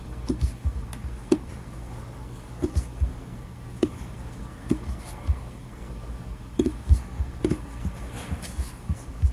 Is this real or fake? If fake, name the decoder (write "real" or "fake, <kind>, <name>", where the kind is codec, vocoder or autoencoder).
fake, codec, SNAC